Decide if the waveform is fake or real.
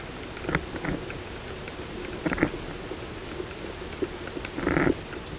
real